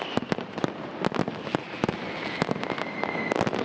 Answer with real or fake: real